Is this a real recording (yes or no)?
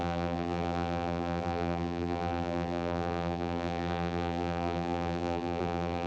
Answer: no